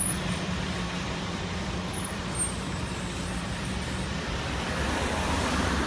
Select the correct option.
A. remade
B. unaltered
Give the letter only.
A